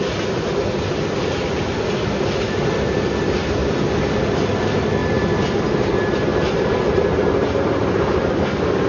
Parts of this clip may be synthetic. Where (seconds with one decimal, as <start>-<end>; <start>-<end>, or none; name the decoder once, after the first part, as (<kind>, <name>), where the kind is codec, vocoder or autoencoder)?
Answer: none